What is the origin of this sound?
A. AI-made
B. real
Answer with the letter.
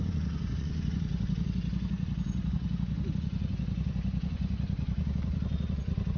A